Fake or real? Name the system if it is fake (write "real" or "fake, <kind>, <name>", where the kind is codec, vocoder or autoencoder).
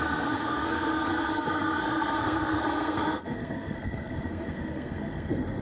fake, codec, SNAC